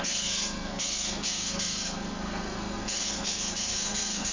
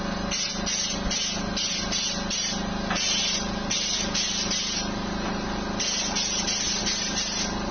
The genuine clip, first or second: second